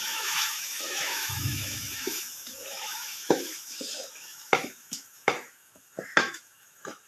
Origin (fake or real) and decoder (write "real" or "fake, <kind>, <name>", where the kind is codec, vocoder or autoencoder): fake, autoencoder, DAC-VAE